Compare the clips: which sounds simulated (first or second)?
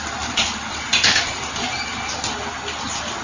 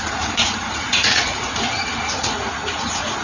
second